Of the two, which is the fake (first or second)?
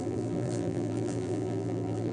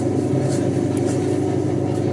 first